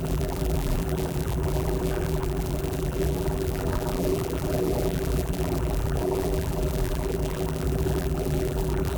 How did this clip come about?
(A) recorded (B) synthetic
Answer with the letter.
B